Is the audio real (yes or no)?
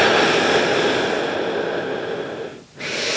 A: yes